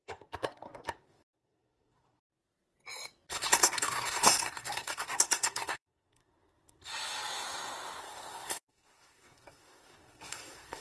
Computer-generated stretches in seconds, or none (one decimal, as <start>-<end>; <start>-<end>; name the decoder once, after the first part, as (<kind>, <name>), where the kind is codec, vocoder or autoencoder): 0.0-2.3 (codec, SNAC); 3.3-6.9; 8.0-10.8

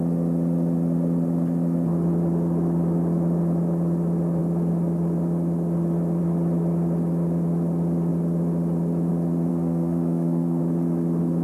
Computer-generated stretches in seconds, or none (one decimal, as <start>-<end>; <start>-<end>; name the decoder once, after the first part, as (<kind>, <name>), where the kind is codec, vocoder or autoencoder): 9.5-10.6 (codec, SNAC)

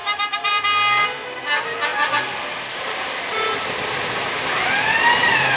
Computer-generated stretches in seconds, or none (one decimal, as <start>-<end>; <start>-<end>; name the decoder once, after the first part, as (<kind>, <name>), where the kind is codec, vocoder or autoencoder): none

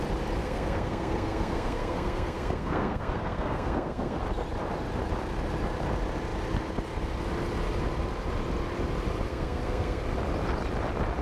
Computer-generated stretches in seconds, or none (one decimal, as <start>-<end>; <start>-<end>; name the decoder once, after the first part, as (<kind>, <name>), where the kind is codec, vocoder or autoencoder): 0.4-4.2 (codec, SNAC); 9.3-10.0

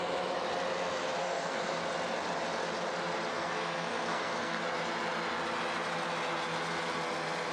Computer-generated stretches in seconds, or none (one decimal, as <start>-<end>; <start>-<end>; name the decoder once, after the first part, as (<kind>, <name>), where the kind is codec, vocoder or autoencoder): 1.2-1.8 (codec, SNAC); 3.3-4.6

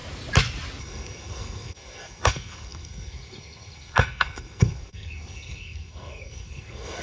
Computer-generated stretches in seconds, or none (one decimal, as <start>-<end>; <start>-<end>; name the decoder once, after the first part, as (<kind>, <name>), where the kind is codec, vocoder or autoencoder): 0.8-7.0 (codec, SNAC)